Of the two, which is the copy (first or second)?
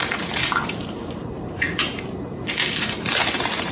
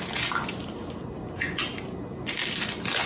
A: first